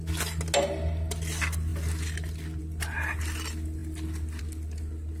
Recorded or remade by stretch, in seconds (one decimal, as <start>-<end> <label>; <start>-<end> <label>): 0.0-5.2 recorded